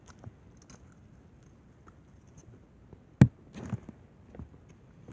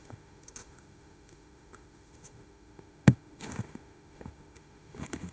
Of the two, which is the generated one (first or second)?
second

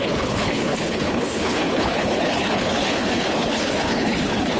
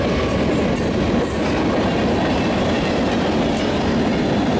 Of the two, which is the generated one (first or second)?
first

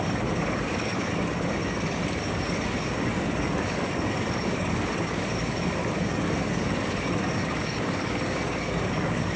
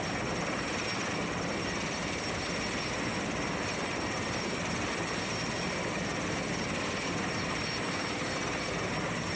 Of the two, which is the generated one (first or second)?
first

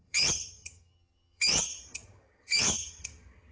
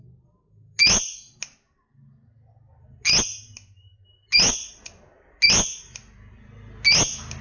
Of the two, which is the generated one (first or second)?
first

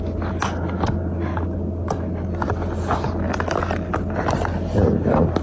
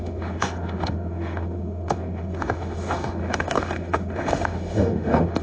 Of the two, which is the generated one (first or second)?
second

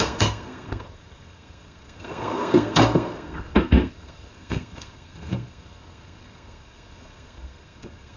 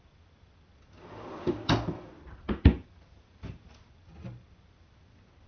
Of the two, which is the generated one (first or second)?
first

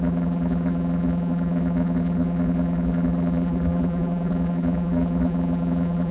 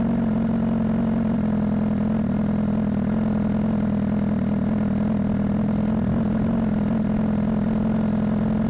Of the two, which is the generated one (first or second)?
first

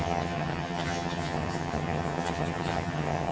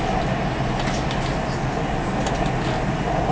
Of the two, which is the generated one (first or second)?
first